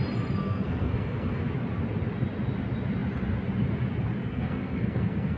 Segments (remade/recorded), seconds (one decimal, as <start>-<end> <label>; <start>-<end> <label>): 0.0-0.4 recorded; 0.4-1.4 remade; 1.4-4.2 recorded; 4.2-5.4 remade